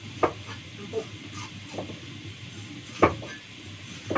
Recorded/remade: recorded